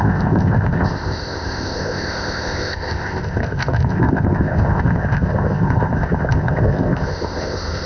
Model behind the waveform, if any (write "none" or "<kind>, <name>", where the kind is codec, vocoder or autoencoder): codec, ZipCodec